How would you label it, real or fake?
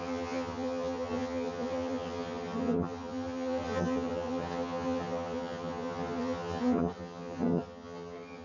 fake